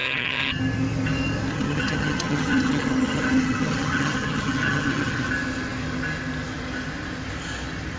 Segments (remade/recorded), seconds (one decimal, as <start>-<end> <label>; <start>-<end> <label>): 0.0-0.6 remade; 0.6-1.5 recorded; 1.5-5.3 remade; 5.3-8.0 recorded